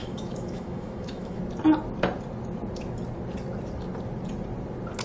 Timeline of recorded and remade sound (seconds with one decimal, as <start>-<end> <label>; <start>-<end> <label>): 0.0-1.4 remade; 1.4-5.0 recorded